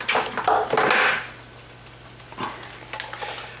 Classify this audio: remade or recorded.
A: recorded